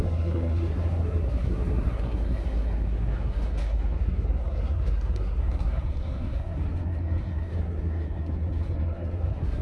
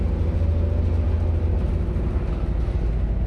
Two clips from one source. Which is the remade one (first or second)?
first